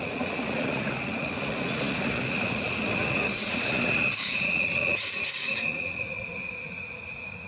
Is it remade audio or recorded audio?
remade